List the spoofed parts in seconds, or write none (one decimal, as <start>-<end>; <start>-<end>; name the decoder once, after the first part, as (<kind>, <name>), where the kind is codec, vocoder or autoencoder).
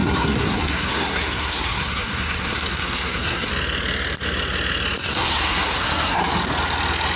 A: 0.0-3.5 (codec, SNAC); 5.0-6.2